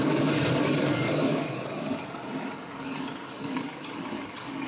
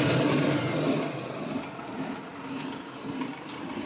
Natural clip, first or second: second